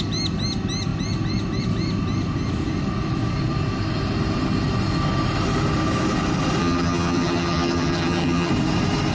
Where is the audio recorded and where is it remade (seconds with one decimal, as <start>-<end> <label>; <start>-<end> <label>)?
0.0-6.6 recorded; 6.6-8.5 remade; 8.5-9.1 recorded